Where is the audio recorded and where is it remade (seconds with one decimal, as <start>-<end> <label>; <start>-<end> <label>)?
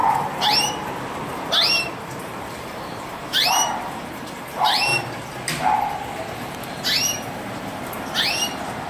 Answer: 0.0-1.7 recorded; 1.7-4.9 remade; 4.9-6.6 recorded; 6.6-8.9 remade